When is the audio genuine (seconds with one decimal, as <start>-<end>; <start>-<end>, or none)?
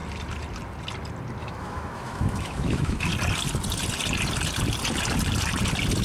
0.0-1.4; 3.1-6.0